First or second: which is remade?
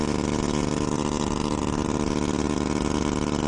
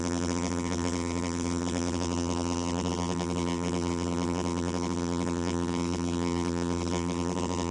second